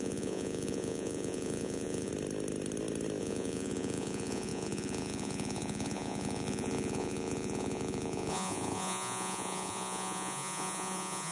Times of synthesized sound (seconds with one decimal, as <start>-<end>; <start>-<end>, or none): 0.0-2.1; 3.2-11.3